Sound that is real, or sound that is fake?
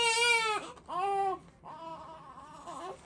real